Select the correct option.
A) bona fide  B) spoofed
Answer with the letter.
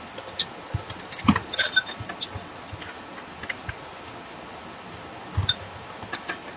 A